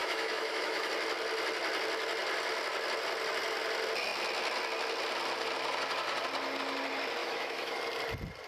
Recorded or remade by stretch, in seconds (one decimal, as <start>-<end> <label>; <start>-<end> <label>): 0.0-0.9 remade; 0.9-7.2 recorded; 7.2-7.8 remade; 7.8-8.5 recorded